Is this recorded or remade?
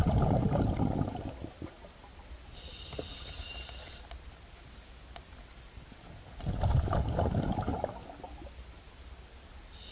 recorded